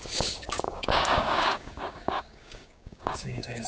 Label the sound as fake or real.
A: fake